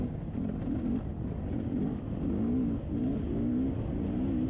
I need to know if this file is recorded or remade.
recorded